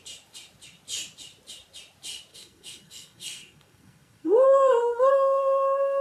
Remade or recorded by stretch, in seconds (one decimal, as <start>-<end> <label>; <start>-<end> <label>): 0.0-2.3 recorded; 2.3-6.0 remade

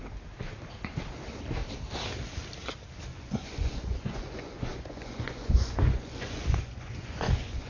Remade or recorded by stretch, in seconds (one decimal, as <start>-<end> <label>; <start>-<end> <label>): 0.0-3.1 recorded; 3.1-7.7 remade

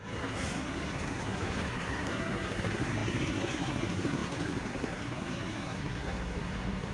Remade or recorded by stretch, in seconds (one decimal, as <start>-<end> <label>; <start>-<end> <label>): 0.0-6.9 remade

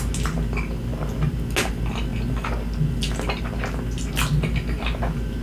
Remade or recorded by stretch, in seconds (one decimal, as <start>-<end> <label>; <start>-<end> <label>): 0.0-5.4 recorded

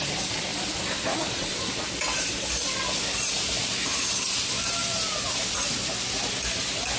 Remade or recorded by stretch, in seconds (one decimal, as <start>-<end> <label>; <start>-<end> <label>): 0.0-7.0 recorded

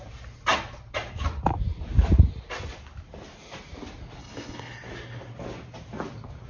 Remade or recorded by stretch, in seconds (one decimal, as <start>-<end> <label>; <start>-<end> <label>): 0.0-4.2 recorded; 4.2-4.7 remade; 4.7-6.5 recorded

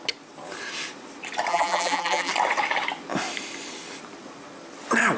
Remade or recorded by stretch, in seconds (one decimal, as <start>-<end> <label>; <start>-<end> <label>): 0.0-1.5 recorded; 1.5-2.3 remade; 2.3-5.2 recorded

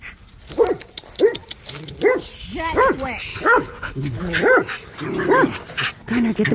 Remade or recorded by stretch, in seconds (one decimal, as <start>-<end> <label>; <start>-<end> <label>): 0.0-3.3 recorded; 3.3-4.2 remade; 4.2-6.5 recorded